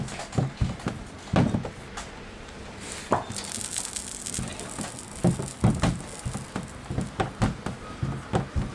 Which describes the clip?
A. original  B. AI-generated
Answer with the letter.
A